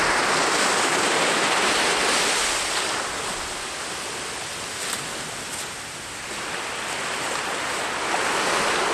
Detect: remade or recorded recorded